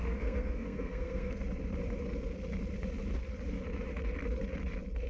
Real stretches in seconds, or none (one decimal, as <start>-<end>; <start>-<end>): 1.3-5.1